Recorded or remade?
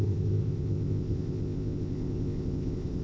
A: remade